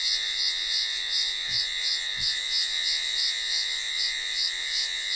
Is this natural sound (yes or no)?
no